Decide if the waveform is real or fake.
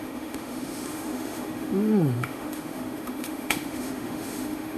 fake